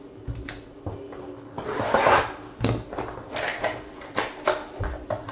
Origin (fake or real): real